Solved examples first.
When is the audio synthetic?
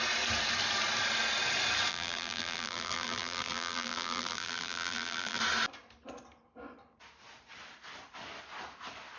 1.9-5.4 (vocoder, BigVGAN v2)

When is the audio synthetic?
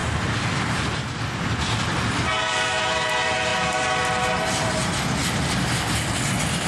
3.5-4.9 (vocoder, BigVGAN v2)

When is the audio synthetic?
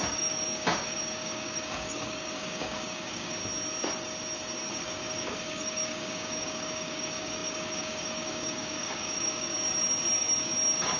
0.0-3.4 (codec, DAC); 4.7-11.0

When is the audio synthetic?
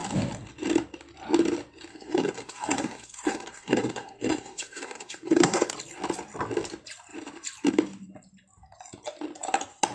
1.9-5.7 (codec, SNAC)